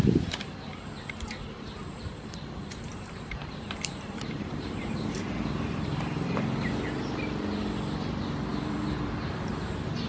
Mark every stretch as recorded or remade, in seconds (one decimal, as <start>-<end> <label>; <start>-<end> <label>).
0.0-2.9 recorded; 2.9-5.8 remade; 5.8-8.5 recorded; 8.5-9.5 remade; 9.5-10.1 recorded